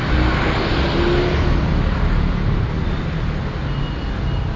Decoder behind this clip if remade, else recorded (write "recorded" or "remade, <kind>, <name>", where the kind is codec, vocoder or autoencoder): recorded